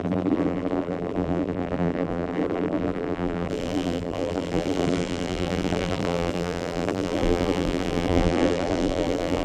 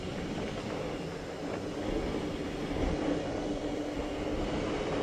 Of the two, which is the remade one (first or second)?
first